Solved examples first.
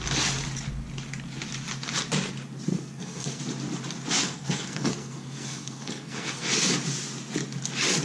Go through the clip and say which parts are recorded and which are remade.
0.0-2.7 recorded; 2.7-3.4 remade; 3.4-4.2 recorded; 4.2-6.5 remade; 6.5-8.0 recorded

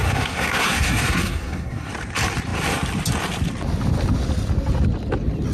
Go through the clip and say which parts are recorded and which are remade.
0.0-1.9 remade; 1.9-5.5 recorded